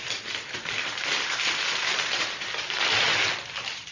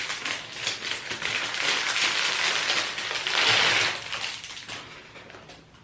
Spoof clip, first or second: first